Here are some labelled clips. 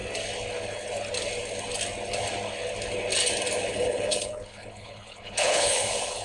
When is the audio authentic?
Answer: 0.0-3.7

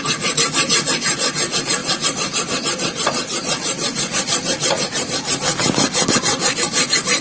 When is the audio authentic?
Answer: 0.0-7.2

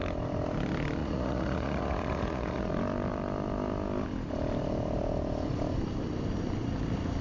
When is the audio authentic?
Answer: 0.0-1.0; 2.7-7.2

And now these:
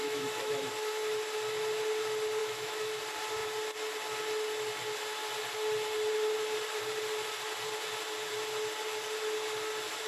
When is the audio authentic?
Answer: 0.7-2.4; 3.0-10.1